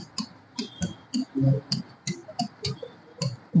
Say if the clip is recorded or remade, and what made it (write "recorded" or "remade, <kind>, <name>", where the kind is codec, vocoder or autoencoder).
recorded